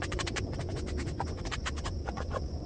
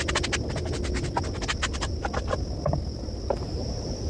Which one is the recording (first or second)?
second